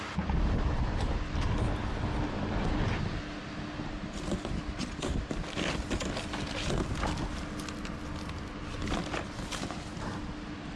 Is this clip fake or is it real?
real